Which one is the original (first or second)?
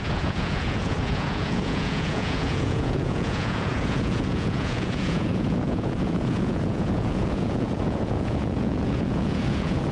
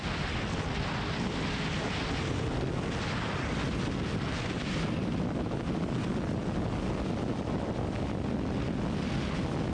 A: second